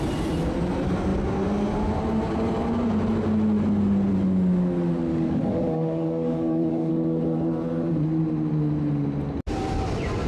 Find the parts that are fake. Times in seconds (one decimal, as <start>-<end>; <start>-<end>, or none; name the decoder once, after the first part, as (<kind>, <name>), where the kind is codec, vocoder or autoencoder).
5.1-6.9 (codec, DAC)